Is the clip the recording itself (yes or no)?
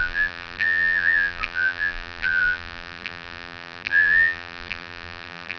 no